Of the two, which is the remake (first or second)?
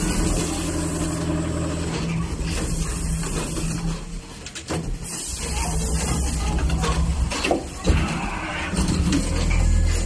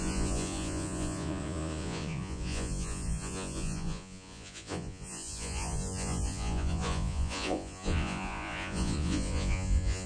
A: second